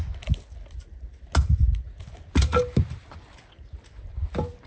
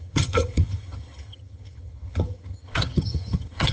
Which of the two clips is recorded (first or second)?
first